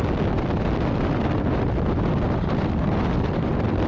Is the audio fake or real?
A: real